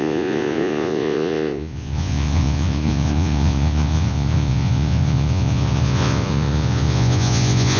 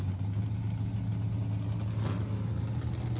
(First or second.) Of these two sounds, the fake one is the first